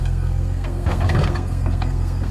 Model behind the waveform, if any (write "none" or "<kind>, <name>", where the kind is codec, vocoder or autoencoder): codec, SNAC